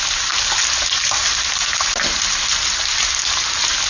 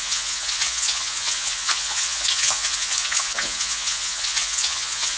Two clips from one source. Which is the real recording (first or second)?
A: first